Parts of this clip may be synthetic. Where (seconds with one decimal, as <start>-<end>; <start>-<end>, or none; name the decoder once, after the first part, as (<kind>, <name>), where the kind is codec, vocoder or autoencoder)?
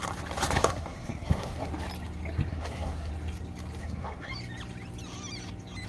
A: 0.6-1.7 (codec, SNAC); 2.5-3.1; 3.8-4.3